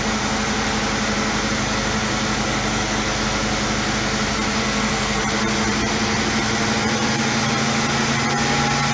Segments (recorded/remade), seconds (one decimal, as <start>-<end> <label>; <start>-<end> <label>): 0.0-4.6 recorded; 4.6-5.2 remade; 5.2-8.9 recorded